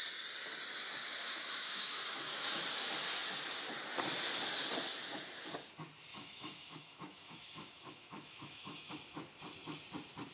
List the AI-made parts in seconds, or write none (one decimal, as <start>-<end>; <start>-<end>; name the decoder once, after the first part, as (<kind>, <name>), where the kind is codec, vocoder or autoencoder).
1.2-2.6 (autoencoder, DAC-VAE); 6.1-8.9